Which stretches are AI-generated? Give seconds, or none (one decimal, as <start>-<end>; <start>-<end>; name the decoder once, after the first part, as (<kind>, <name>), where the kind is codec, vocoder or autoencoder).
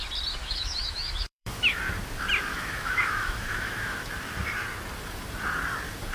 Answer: 0.4-1.8 (autoencoder, DAC-VAE); 2.5-4.1